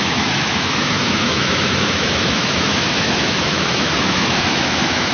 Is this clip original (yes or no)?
no